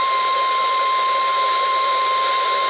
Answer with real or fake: fake